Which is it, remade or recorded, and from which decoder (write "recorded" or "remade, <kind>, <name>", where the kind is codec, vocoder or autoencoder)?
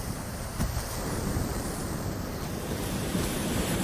remade, vocoder, BigVGAN v2